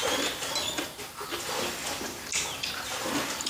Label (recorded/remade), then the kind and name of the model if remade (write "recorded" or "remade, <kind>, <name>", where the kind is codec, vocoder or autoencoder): recorded